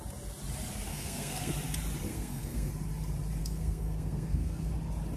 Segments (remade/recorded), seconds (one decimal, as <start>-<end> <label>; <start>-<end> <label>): 0.0-0.9 recorded; 0.9-1.5 remade; 1.5-2.1 recorded; 2.1-2.7 remade; 2.7-3.4 recorded; 3.4-4.7 remade; 4.7-5.2 recorded